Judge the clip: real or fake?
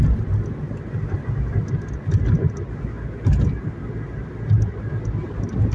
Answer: real